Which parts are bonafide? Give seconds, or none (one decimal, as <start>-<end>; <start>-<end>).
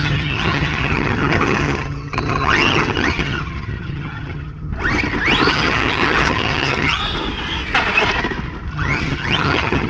4.7-5.5; 7.0-8.7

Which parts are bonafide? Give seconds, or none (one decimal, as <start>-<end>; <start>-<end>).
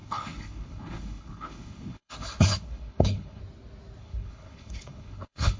3.4-4.0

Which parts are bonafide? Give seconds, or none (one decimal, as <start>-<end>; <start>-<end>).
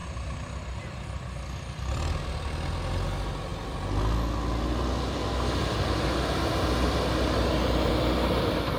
0.0-8.8